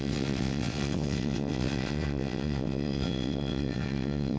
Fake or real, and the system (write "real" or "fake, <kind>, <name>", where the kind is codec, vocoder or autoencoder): fake, vocoder, WaveNeXt